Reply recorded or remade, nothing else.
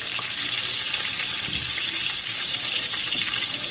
remade